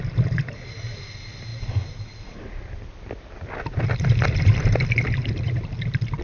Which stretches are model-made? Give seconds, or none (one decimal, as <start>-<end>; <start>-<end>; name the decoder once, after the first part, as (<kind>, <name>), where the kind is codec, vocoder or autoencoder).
none